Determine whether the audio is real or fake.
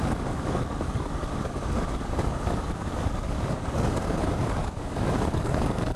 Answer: fake